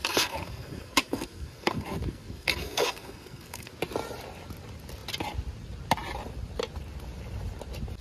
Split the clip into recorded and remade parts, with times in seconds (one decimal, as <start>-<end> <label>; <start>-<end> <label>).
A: 0.0-3.7 remade; 3.7-8.0 recorded